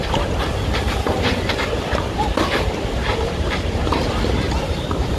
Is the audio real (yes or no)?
no